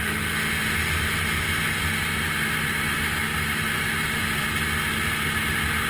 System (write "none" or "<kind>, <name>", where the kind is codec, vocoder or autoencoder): none